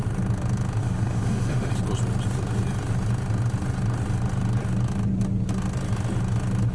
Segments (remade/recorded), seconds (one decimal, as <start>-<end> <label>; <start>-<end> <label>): 0.0-0.8 recorded; 0.8-1.7 remade; 1.7-6.7 recorded